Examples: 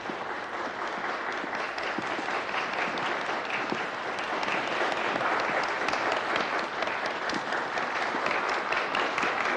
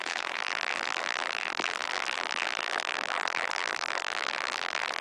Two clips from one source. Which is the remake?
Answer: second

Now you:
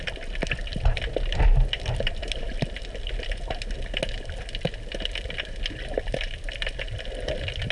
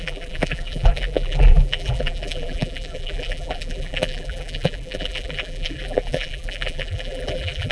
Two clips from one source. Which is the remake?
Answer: second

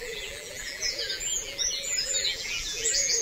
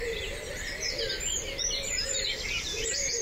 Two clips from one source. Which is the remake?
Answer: first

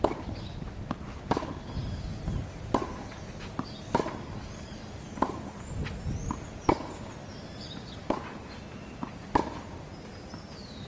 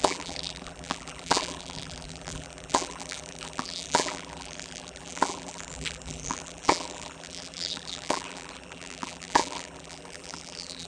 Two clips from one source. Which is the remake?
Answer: second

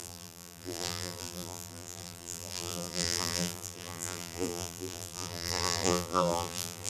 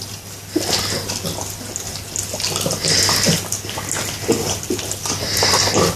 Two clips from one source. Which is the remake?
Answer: first